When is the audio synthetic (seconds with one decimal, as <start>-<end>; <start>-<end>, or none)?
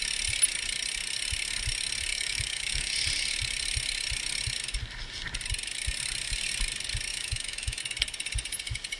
2.1-2.9; 7.1-7.8